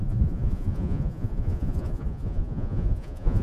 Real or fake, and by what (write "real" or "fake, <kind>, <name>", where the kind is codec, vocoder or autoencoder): fake, vocoder, Vocos